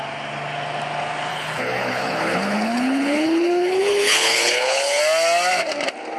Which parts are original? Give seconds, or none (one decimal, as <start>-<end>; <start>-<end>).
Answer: 0.0-1.3; 5.0-6.2